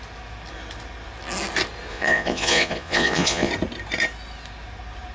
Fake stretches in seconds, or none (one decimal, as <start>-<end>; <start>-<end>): 1.9-3.5

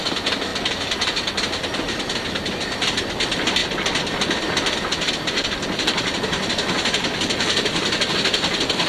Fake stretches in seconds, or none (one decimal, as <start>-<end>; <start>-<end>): 3.6-8.1

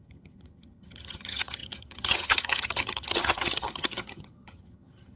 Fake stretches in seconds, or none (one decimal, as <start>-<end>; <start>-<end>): 0.0-5.2

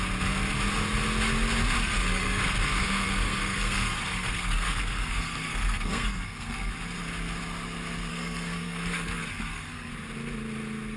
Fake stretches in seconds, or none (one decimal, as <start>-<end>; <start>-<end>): 1.8-6.7; 8.1-9.9

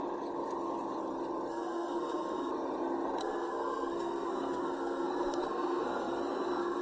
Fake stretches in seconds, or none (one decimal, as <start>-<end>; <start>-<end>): 1.5-2.5; 3.2-6.8

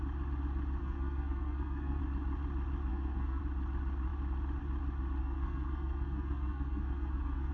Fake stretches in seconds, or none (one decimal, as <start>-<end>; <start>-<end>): 0.8-2.0; 2.9-3.4; 5.2-7.5

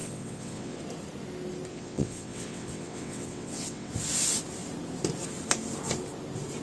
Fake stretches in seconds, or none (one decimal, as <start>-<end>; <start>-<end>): 0.0-0.8; 1.7-3.9

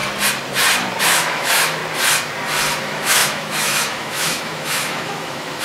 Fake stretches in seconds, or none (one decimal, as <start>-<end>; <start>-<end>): 1.0-1.8; 2.8-5.6